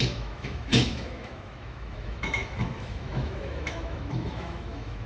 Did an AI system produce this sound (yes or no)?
yes